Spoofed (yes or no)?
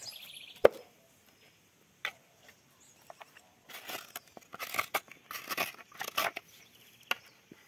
no